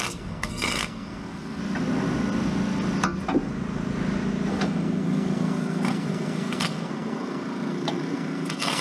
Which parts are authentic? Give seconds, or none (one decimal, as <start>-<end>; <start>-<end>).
1.6-4.5